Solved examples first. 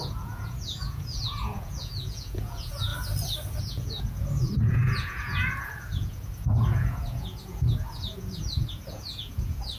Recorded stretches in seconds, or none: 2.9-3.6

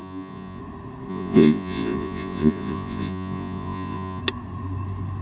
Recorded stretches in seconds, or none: 0.6-1.1; 4.2-5.2

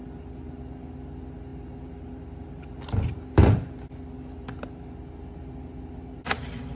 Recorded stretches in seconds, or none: 0.0-6.8

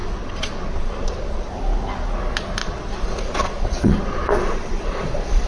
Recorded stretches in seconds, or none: 1.5-2.6

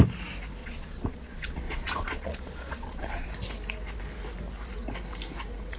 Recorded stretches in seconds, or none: 0.0-0.6; 3.3-5.8

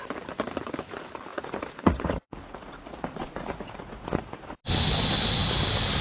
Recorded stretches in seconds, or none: 0.0-1.3; 4.6-6.0

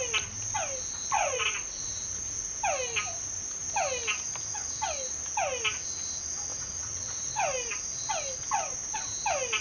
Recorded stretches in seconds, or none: 0.0-1.2; 2.6-6.5; 7.3-9.6

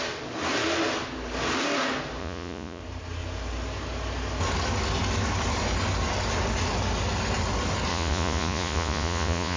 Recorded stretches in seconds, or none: 0.0-2.2; 2.8-7.9